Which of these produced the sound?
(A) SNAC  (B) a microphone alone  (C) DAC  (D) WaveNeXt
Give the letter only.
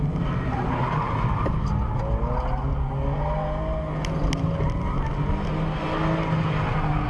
B